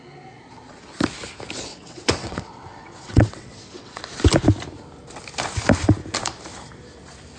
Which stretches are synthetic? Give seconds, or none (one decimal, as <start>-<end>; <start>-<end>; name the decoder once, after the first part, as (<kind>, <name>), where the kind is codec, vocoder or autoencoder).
1.7-4.0 (vocoder, WaveNeXt)